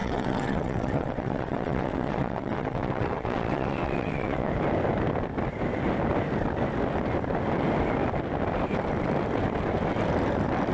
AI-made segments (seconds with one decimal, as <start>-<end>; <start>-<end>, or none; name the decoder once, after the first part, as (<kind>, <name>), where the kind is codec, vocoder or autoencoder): 0.0-4.5 (vocoder, WaveNeXt)